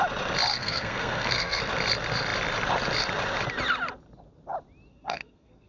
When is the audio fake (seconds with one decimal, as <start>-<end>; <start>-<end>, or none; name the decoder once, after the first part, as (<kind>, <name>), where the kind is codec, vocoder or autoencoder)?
0.5-1.6 (codec, SNAC); 4.9-5.7